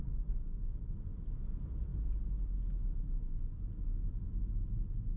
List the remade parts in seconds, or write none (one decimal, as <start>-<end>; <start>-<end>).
none